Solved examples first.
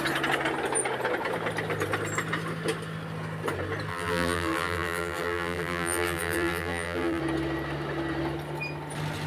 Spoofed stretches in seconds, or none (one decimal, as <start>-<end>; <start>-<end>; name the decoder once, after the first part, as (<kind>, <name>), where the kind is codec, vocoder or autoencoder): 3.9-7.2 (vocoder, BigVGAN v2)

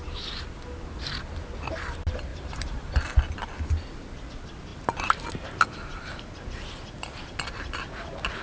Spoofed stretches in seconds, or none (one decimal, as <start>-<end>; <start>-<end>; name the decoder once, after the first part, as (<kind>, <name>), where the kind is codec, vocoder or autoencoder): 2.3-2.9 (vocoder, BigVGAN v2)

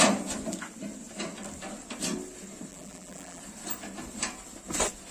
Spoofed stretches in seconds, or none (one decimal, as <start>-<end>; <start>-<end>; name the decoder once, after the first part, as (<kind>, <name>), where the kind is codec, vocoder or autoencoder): 2.7-3.4 (vocoder, BigVGAN v2)

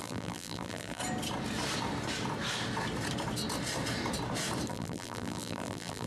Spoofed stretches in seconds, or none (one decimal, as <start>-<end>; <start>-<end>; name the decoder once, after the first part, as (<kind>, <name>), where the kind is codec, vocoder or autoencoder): 0.0-1.0 (vocoder, BigVGAN v2); 4.7-6.1